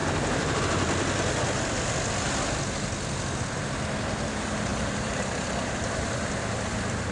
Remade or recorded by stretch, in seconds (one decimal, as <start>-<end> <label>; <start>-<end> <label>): 0.0-0.6 remade; 0.6-4.7 recorded; 4.7-6.3 remade; 6.3-7.1 recorded